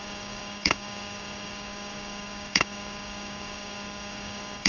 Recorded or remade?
remade